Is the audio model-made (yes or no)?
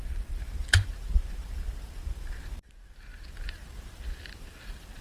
no